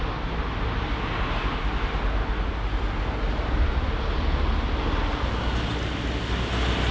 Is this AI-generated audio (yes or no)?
no